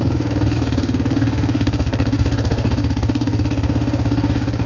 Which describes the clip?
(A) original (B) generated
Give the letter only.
B